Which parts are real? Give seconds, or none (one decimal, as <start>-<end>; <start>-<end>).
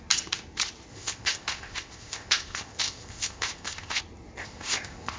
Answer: 0.0-0.9; 4.0-4.4